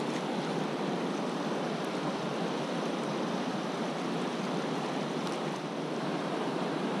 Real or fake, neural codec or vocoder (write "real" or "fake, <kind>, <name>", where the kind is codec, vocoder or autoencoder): fake, vocoder, BigVGAN v2